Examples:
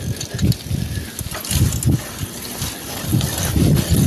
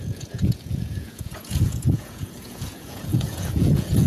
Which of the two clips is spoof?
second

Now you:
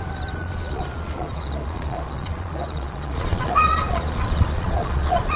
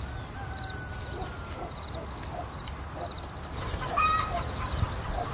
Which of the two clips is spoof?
first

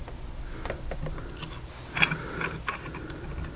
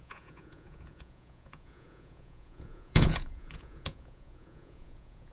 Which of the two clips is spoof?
second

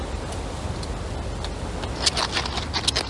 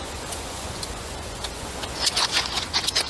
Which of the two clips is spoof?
second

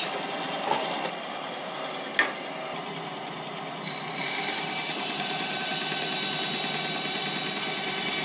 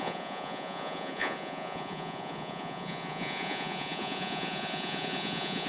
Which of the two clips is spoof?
second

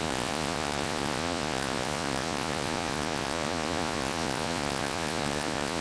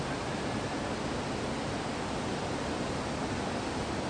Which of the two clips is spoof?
first